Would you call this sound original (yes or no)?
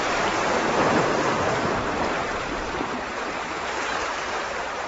no